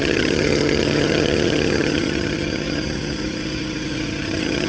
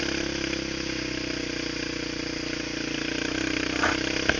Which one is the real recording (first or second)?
second